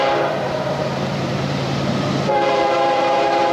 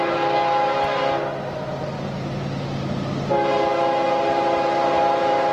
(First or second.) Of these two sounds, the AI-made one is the first